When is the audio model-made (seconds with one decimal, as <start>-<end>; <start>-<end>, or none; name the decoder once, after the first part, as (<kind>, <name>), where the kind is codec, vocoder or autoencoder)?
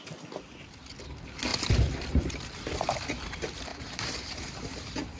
3.7-5.2 (vocoder, BigVGAN v2)